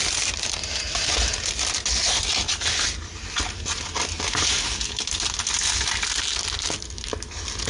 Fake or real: real